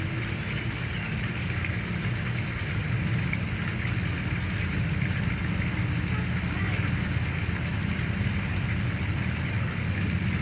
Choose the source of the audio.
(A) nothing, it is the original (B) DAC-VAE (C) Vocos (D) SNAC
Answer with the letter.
A